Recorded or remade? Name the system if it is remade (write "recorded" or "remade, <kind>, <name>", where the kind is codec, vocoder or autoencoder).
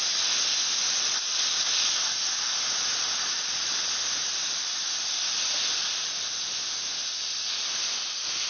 recorded